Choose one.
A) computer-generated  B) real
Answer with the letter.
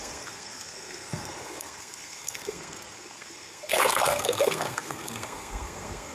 A